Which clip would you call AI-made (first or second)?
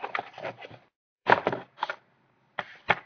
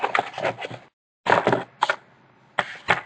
first